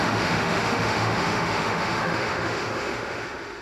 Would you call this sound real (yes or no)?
no